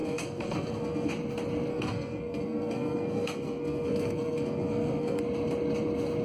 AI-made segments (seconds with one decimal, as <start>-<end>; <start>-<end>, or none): 0.0-1.1; 1.7-5.2